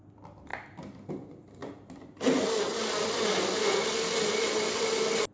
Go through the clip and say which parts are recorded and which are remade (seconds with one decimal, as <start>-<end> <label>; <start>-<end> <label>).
0.0-5.3 recorded

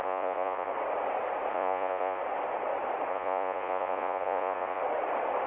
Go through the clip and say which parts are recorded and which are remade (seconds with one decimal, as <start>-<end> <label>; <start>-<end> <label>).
0.0-0.7 remade; 0.7-1.5 recorded; 1.5-2.2 remade; 2.2-3.1 recorded; 3.1-4.8 remade; 4.8-5.5 recorded

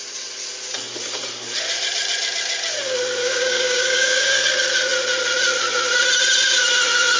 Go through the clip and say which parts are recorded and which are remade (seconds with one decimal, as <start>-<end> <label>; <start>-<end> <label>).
0.0-3.2 recorded; 3.2-4.5 remade; 4.5-7.2 recorded

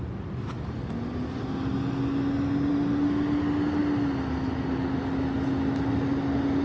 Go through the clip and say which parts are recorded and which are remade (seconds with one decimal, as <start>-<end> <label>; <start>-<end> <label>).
0.0-6.6 recorded

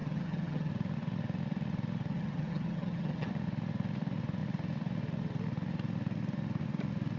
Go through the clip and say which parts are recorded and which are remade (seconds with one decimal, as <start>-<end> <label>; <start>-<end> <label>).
0.0-0.7 remade; 0.7-2.1 recorded; 2.1-3.3 remade; 3.3-7.2 recorded

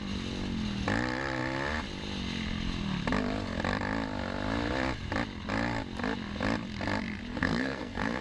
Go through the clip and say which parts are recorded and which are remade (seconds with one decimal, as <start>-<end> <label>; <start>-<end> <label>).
0.0-7.4 recorded; 7.4-8.2 remade